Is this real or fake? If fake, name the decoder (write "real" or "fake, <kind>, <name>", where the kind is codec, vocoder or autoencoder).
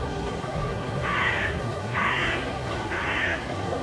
fake, codec, SNAC